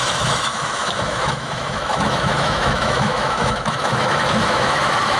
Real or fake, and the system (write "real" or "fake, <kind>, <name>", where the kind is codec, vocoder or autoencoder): fake, autoencoder, DAC-VAE